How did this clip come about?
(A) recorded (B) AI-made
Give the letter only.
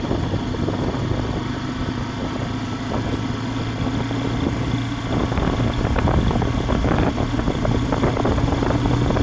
A